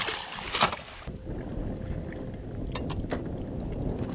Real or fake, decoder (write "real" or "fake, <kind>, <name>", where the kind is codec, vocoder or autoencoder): real